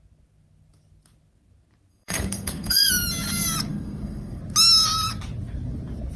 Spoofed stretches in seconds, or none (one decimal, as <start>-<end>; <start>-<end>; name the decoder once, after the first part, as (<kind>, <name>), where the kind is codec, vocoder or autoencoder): 1.9-2.9 (codec, SNAC); 3.7-4.4